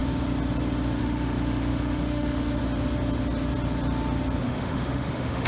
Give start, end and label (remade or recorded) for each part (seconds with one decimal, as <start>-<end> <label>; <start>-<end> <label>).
0.0-1.0 recorded; 1.0-2.6 remade; 2.6-4.4 recorded; 4.4-5.5 remade